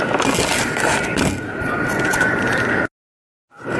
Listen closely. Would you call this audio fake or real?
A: real